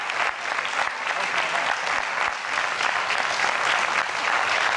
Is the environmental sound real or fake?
real